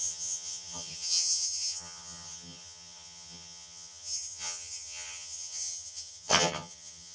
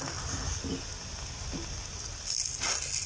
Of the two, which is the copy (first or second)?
first